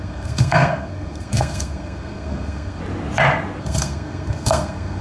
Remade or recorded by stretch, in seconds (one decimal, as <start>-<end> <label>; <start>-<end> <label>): 0.0-2.8 remade; 2.8-3.6 recorded; 3.6-5.0 remade